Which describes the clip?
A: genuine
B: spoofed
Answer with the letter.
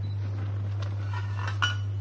A